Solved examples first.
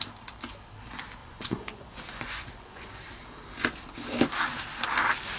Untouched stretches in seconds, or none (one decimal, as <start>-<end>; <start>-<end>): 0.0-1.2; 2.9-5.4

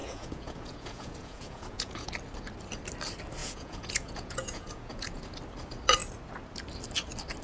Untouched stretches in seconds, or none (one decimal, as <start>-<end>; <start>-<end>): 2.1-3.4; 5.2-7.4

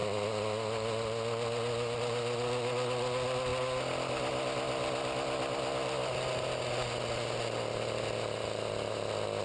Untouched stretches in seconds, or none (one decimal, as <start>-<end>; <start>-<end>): 0.0-9.4

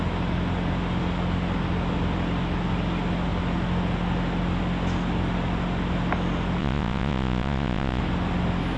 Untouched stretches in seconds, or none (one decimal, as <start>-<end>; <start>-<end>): 0.0-6.6; 8.0-8.8

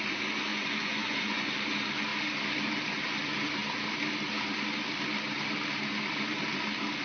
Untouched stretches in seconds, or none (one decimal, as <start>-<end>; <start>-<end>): 0.0-0.5; 1.5-7.0